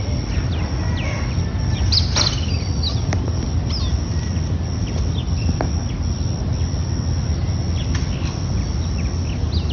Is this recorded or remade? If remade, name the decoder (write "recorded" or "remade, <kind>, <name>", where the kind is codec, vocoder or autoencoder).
recorded